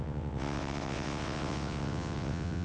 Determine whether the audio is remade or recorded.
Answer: remade